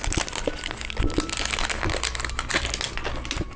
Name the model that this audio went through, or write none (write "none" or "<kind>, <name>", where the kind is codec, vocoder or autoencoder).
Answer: none